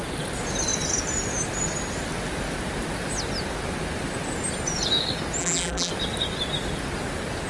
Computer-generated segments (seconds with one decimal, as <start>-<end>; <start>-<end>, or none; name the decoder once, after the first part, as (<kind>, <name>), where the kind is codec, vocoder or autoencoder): 5.4-5.9 (vocoder, BigVGAN v2)